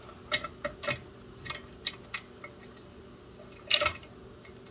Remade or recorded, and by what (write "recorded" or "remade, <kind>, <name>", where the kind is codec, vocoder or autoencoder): recorded